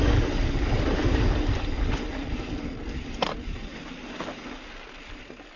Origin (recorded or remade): recorded